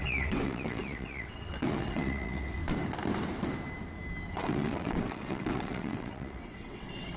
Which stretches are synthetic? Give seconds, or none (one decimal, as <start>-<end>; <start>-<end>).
0.0-2.6; 4.3-7.2